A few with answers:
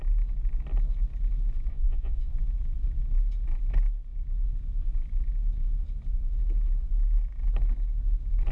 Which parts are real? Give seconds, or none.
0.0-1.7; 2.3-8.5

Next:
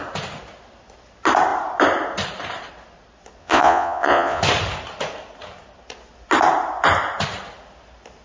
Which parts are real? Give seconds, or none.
0.0-3.4; 4.4-8.2

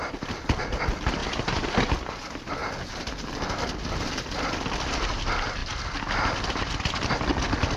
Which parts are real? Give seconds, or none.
0.0-1.2; 2.0-7.8

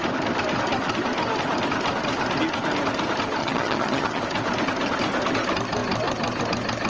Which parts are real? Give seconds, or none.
0.0-3.4; 4.2-6.9

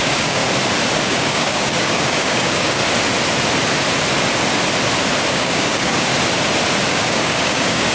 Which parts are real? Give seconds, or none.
0.4-1.0; 2.8-5.3; 6.1-6.9

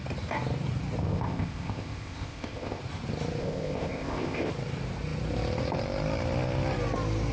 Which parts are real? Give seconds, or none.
0.0-1.0; 2.8-3.4; 4.5-7.3

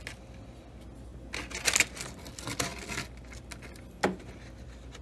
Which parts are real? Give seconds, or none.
0.0-5.0

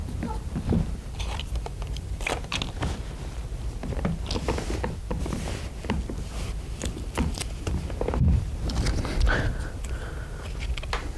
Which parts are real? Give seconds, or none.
2.5-7.6